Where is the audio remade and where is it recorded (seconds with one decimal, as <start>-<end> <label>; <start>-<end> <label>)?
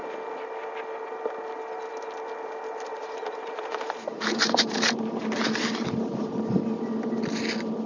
0.0-2.9 recorded; 2.9-6.3 remade; 6.3-7.9 recorded